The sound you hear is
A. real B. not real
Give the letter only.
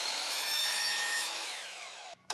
B